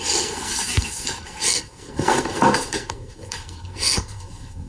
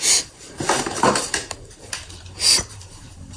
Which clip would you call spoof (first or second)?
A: first